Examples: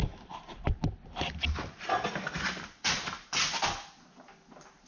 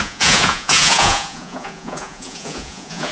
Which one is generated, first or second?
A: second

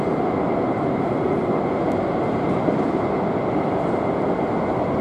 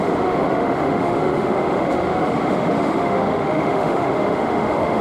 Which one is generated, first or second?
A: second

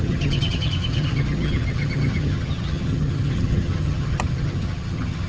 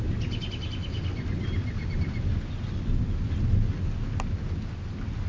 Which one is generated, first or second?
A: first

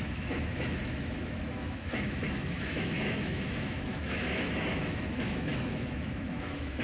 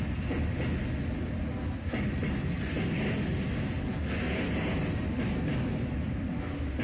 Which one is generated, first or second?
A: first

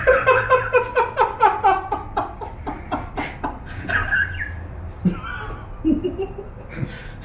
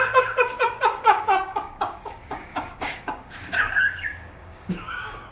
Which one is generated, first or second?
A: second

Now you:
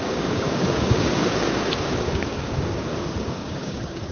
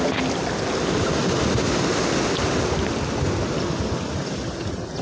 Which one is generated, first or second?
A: first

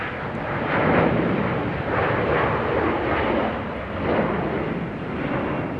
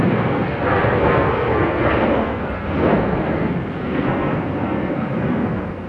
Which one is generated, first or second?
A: second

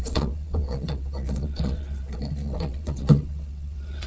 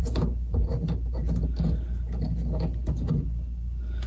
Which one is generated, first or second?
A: first